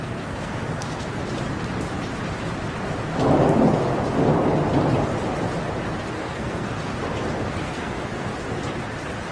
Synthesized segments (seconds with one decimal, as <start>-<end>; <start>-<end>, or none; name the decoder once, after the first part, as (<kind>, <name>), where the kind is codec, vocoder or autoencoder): 0.0-1.2 (codec, SNAC); 6.2-6.9; 7.5-8.3